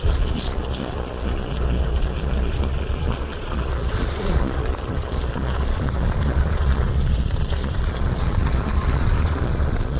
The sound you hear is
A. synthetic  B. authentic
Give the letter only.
A